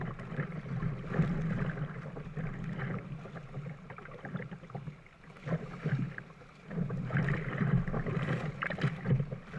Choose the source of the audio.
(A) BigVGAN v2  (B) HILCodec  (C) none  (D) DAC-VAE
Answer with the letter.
C